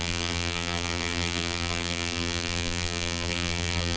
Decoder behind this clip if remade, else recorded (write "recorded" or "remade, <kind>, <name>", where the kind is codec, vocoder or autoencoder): remade, vocoder, BigVGAN v2